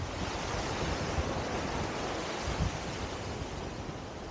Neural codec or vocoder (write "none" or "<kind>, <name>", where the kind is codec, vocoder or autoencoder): none